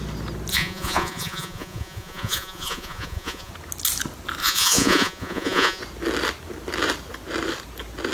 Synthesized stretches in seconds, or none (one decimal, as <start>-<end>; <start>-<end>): 0.5-3.5; 4.4-5.8